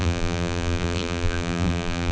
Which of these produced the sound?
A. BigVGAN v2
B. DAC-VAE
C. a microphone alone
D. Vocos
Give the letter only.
A